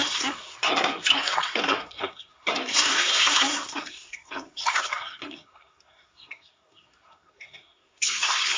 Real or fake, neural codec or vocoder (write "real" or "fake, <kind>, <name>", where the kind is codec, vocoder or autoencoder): fake, codec, SNAC